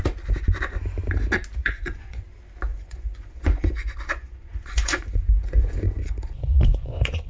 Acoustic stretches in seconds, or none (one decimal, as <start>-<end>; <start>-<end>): 0.0-1.6; 2.2-2.7